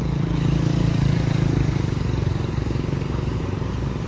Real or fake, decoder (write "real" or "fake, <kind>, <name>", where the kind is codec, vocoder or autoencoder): fake, codec, DAC